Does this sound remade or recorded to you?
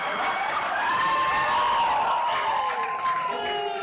remade